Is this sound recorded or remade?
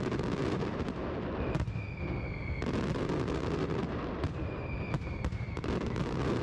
recorded